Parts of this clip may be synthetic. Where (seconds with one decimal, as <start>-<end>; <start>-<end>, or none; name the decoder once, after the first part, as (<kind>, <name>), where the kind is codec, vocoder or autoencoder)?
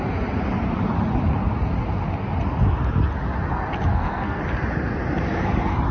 3.9-4.4 (codec, SNAC)